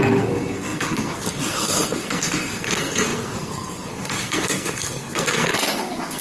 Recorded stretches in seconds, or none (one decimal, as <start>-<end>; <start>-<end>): none